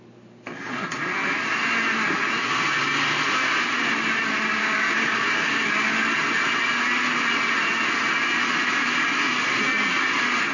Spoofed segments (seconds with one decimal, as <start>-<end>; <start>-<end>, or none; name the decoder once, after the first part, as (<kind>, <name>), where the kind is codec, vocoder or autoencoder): 4.6-5.7 (codec, DAC)

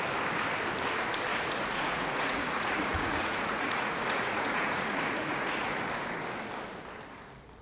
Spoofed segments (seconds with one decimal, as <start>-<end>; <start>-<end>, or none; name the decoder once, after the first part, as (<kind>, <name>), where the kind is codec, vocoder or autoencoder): 1.3-5.8 (vocoder, Vocos)

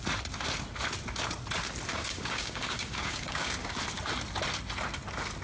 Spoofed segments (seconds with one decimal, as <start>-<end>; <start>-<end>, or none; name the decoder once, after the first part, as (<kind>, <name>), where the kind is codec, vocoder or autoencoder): 1.9-3.8 (codec, DAC)

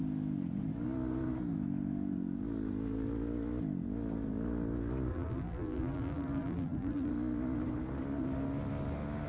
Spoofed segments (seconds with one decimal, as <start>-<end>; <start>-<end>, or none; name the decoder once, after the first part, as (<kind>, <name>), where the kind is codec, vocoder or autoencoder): 5.1-7.1 (vocoder, BigVGAN v2)

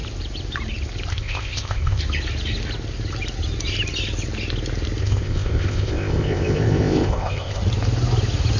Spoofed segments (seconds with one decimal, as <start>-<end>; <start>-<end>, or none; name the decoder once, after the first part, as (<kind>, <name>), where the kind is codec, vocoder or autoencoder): 1.1-2.0 (codec, ZipCodec); 5.0-7.6

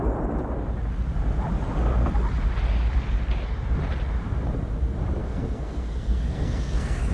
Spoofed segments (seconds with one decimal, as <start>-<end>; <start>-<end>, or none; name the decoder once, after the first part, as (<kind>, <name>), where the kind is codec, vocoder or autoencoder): 5.2-7.1 (codec, SNAC)